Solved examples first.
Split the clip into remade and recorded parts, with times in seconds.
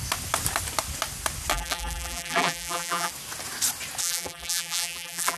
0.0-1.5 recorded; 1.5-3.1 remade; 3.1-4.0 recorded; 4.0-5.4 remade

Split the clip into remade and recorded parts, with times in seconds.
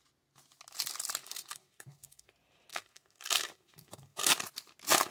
0.0-1.2 recorded; 1.2-2.3 remade; 2.3-2.7 recorded; 2.7-4.3 remade; 4.3-5.1 recorded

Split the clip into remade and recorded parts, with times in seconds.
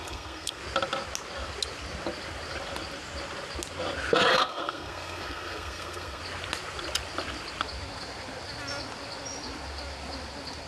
0.0-0.6 remade; 0.6-4.3 recorded; 4.3-6.2 remade; 6.2-10.7 recorded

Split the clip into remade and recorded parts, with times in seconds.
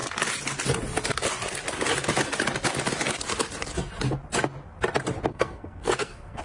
0.0-5.3 recorded; 5.3-6.4 remade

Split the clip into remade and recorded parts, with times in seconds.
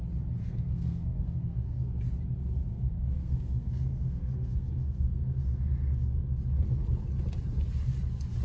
0.0-0.4 recorded; 0.4-2.0 remade; 2.0-2.7 recorded; 2.7-5.6 remade; 5.6-8.4 recorded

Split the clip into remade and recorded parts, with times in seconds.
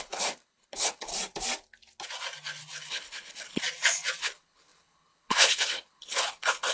0.0-1.1 remade; 1.1-2.9 recorded; 2.9-3.6 remade; 3.6-4.2 recorded; 4.2-6.7 remade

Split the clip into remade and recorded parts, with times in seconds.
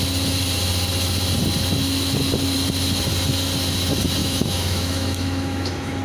0.0-4.2 recorded; 4.2-6.0 remade